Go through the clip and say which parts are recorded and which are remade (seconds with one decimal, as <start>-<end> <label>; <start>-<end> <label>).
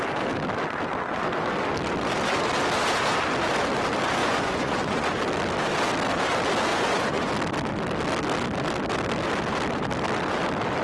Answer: 0.0-4.2 recorded; 4.2-5.2 remade; 5.2-6.7 recorded; 6.7-7.3 remade; 7.3-10.8 recorded